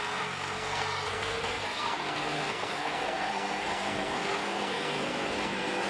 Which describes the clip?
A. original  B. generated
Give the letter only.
B